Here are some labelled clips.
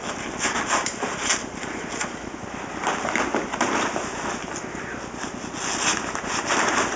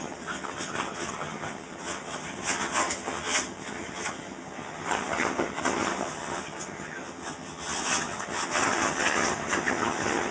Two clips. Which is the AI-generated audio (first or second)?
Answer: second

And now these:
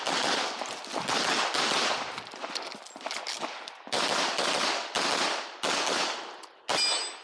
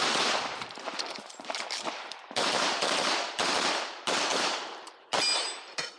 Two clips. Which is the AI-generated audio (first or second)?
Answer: second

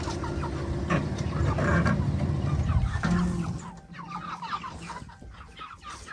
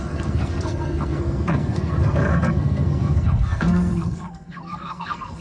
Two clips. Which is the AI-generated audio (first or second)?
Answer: second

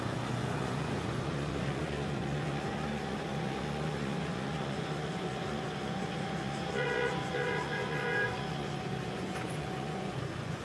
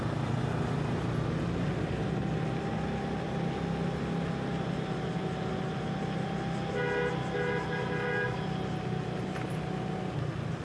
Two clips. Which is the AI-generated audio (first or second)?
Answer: first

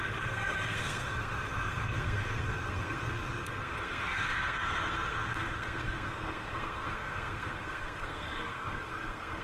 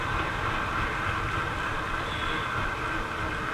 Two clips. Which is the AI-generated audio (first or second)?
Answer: first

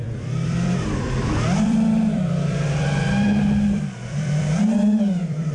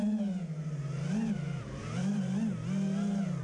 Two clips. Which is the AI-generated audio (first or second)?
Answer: first